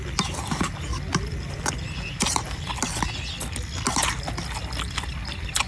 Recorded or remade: recorded